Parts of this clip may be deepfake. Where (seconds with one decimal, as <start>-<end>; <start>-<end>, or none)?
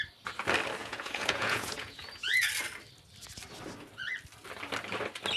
0.8-2.5